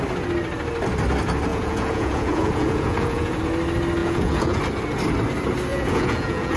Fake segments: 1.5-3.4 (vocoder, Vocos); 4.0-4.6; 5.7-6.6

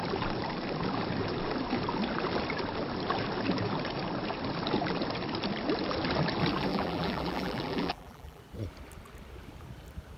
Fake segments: 6.7-8.4 (vocoder, BigVGAN v2)

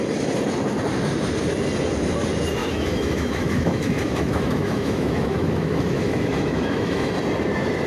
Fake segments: 2.6-7.1 (autoencoder, DAC-VAE)

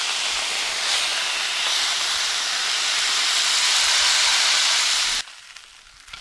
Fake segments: 1.1-2.5 (vocoder, BigVGAN v2); 4.3-5.4

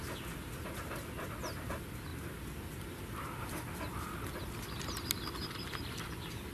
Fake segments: none